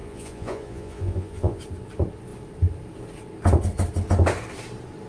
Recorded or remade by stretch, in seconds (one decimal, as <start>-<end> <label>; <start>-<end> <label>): 0.0-1.6 remade; 1.6-5.1 recorded